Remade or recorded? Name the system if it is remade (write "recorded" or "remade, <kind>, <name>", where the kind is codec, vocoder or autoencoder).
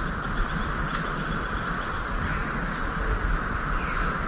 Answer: recorded